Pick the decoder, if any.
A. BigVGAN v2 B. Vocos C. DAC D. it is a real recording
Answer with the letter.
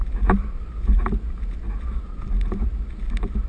D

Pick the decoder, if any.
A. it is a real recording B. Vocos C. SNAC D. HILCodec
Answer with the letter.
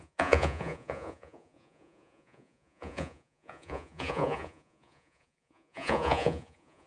B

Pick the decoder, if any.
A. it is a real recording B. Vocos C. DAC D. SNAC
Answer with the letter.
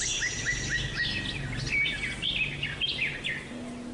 A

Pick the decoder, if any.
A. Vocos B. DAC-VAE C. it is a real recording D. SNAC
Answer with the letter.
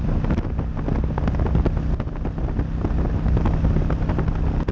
C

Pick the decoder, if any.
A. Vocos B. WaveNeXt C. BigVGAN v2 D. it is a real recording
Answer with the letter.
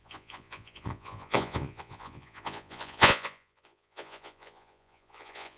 A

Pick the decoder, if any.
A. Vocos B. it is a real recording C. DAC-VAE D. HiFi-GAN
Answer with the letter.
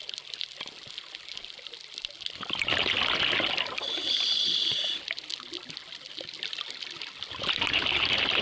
B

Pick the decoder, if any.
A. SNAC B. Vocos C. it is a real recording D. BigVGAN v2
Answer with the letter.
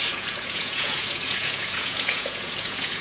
B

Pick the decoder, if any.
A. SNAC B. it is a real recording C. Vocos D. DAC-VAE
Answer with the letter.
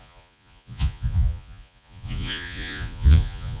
C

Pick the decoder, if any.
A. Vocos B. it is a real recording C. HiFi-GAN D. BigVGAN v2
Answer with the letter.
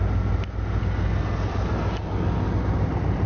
B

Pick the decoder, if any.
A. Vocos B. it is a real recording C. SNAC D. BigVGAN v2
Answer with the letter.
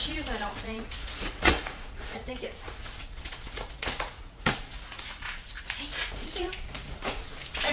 A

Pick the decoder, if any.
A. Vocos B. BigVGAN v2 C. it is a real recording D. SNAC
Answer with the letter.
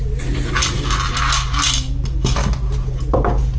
C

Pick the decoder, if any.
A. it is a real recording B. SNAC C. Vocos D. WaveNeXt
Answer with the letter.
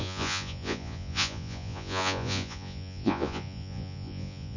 C